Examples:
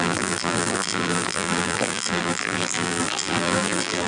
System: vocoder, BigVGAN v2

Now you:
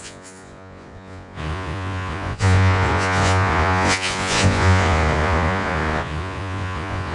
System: vocoder, Vocos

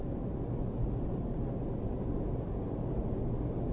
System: none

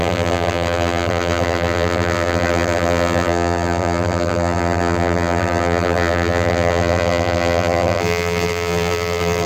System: vocoder, BigVGAN v2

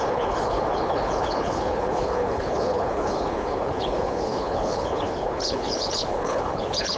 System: codec, HILCodec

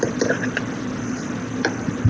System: none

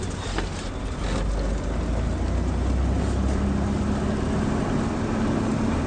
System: none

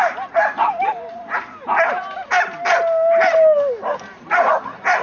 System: none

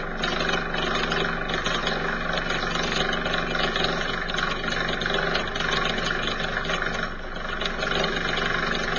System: none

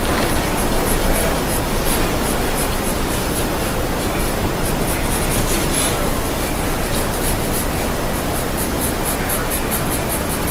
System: none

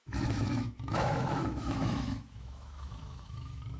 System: autoencoder, DAC-VAE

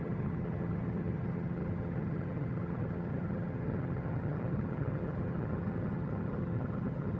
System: vocoder, HiFi-GAN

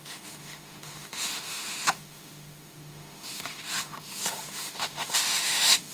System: autoencoder, DAC-VAE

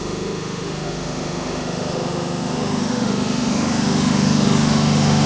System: autoencoder, DAC-VAE